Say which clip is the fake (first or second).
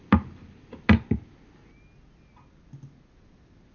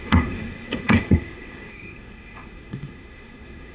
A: second